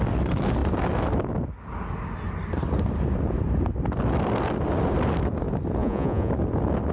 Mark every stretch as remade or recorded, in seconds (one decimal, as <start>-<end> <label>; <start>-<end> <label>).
0.0-5.8 recorded; 5.8-6.3 remade; 6.3-6.9 recorded